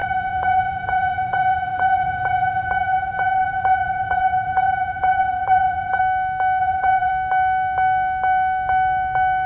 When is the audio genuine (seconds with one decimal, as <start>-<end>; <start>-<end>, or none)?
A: 6.0-6.6; 7.1-9.5